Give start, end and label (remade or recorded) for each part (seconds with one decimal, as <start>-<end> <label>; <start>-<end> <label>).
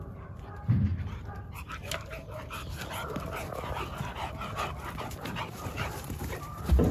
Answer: 0.0-0.9 remade; 0.9-5.0 recorded; 5.0-6.9 remade